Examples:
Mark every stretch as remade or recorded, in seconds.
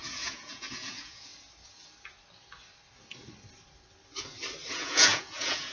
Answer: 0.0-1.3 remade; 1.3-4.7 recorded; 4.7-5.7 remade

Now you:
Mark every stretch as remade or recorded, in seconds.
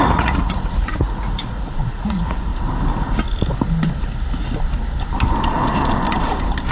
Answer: 0.0-2.5 remade; 2.5-6.7 recorded